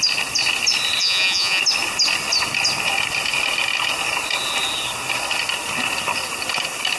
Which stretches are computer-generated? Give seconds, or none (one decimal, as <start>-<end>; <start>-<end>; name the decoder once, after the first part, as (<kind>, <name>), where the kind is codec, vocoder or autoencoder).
1.0-1.6 (vocoder, Vocos)